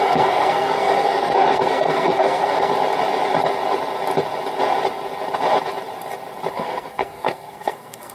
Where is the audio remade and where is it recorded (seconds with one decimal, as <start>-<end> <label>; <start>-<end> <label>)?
0.0-2.7 remade; 2.7-6.5 recorded; 6.5-8.1 remade